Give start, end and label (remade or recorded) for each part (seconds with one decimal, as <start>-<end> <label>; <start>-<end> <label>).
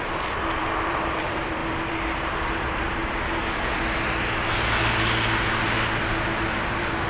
0.0-3.0 remade; 3.0-6.6 recorded; 6.6-7.1 remade